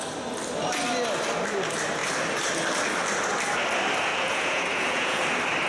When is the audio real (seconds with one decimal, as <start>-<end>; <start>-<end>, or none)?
0.0-4.1; 5.2-5.7